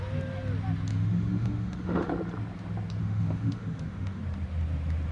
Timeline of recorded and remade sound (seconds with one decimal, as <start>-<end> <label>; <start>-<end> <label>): 0.0-0.9 recorded; 0.9-2.1 remade; 2.1-3.0 recorded; 3.0-4.2 remade; 4.2-5.1 recorded